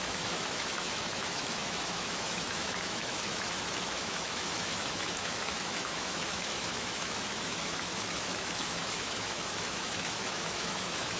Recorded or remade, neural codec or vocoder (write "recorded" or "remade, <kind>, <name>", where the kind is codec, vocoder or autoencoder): remade, autoencoder, DAC-VAE